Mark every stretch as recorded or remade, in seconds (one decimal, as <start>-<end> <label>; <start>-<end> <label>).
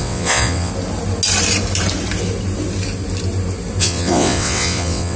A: 0.0-0.7 remade; 0.7-3.8 recorded; 3.8-5.2 remade